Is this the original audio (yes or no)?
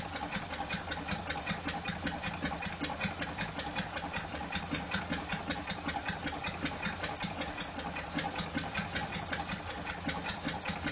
yes